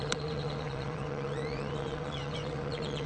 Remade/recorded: remade